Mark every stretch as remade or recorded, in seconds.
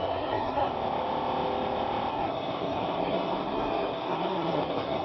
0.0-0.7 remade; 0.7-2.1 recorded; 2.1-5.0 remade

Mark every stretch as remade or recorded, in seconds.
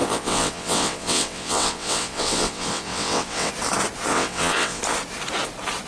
0.0-3.5 remade; 3.5-4.1 recorded; 4.1-4.8 remade; 4.8-5.9 recorded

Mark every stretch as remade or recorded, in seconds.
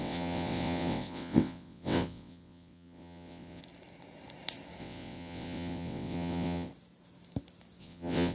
0.0-3.6 remade; 3.6-4.8 recorded; 4.8-6.7 remade; 6.7-7.8 recorded; 7.8-8.3 remade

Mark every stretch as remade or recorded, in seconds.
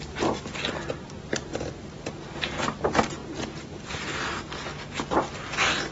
0.0-5.9 recorded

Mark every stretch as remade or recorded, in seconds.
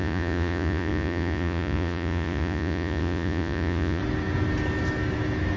0.0-4.0 remade; 4.0-5.6 recorded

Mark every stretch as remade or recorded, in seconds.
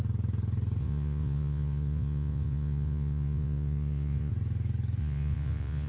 0.0-0.8 recorded; 0.8-4.3 remade; 4.3-5.0 recorded; 5.0-5.9 remade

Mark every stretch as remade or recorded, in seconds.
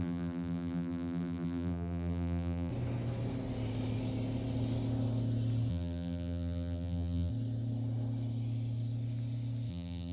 0.0-2.7 remade; 2.7-5.7 recorded; 5.7-7.3 remade; 7.3-9.7 recorded; 9.7-10.1 remade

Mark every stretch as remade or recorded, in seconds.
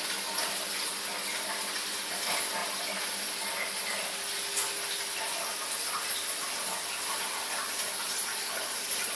0.0-9.2 recorded